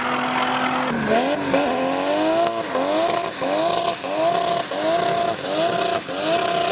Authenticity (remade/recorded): recorded